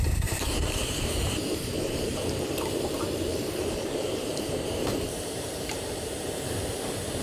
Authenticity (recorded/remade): remade